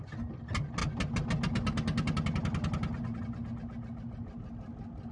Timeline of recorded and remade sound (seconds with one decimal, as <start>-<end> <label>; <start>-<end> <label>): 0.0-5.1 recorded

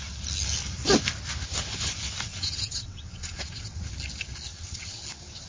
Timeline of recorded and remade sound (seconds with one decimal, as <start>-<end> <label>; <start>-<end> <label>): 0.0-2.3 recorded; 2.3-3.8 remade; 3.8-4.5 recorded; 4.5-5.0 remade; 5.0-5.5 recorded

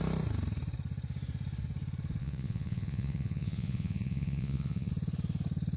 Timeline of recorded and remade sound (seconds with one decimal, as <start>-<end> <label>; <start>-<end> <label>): 0.0-2.2 recorded; 2.2-4.9 remade; 4.9-5.8 recorded

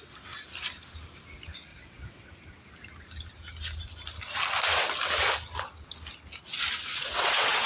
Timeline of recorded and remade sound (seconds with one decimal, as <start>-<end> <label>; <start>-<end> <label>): 0.0-1.7 recorded; 1.7-2.3 remade; 2.3-6.8 recorded; 6.8-7.7 remade

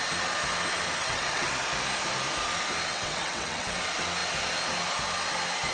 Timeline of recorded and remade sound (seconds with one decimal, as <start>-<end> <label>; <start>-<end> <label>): 0.0-1.0 recorded; 1.0-1.5 remade; 1.5-2.9 recorded; 2.9-3.8 remade; 3.8-5.7 recorded

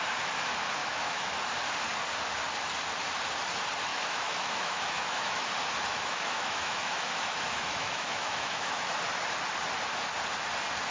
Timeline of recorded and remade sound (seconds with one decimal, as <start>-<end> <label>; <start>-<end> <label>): 0.0-0.8 recorded; 0.8-1.4 remade; 1.4-3.9 recorded; 3.9-5.5 remade; 5.5-5.9 recorded; 5.9-9.0 remade; 9.0-10.9 recorded

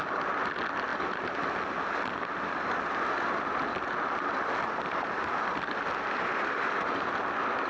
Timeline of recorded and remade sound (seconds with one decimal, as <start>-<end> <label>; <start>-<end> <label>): 0.0-7.7 recorded